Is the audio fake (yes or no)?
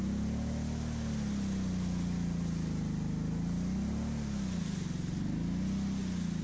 no